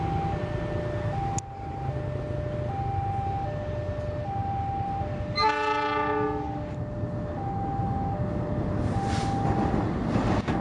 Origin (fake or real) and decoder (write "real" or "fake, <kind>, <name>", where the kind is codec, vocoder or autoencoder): real